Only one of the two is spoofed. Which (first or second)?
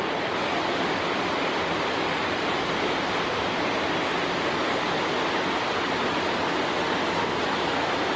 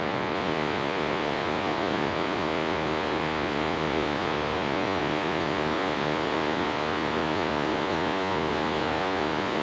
second